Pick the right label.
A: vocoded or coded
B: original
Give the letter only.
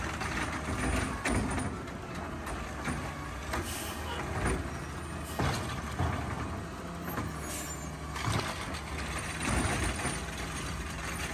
B